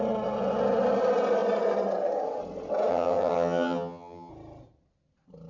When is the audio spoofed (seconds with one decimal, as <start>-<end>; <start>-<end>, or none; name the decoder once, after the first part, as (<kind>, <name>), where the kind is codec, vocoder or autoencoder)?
2.9-4.3 (vocoder, HiFi-GAN)